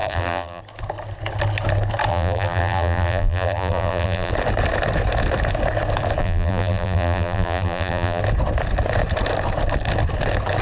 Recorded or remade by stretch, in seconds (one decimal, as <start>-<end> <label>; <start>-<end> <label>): 0.0-0.6 remade; 0.6-2.1 recorded; 2.1-4.3 remade; 4.3-6.2 recorded; 6.2-8.2 remade; 8.2-10.6 recorded

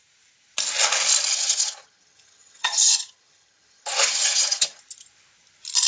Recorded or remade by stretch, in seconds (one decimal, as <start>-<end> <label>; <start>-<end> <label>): 0.0-1.3 recorded; 1.3-4.8 remade; 4.8-5.9 recorded

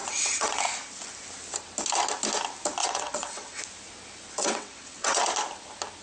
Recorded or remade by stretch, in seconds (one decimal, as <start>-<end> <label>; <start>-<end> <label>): 0.0-0.6 remade; 0.6-2.8 recorded; 2.8-3.6 remade; 3.6-4.4 recorded; 4.4-5.2 remade; 5.2-6.0 recorded

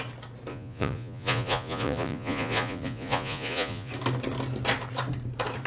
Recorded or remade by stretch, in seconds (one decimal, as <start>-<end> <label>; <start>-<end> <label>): 0.0-0.5 recorded; 0.5-3.9 remade; 3.9-5.7 recorded

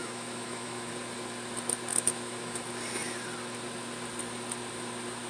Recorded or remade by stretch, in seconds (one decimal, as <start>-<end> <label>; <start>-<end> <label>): 0.0-0.9 remade; 0.9-1.9 recorded; 1.9-2.6 remade; 2.6-5.3 recorded

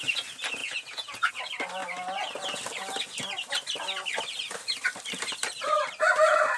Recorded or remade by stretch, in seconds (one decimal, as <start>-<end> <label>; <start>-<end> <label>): 0.0-0.6 recorded; 0.6-1.3 remade; 1.3-6.6 recorded